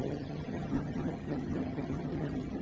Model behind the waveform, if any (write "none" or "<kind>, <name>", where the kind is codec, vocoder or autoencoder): vocoder, HiFi-GAN